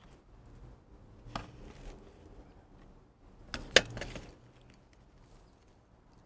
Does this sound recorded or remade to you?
recorded